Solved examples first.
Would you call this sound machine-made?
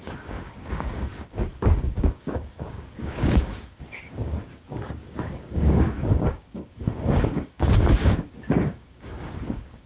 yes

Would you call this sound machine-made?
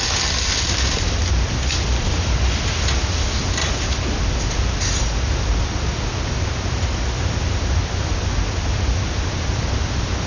no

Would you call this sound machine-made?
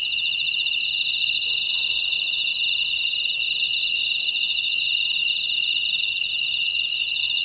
no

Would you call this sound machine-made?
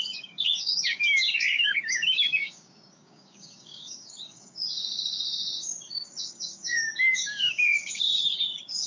yes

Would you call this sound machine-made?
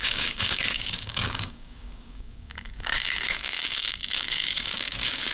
yes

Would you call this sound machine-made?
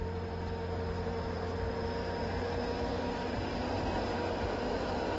no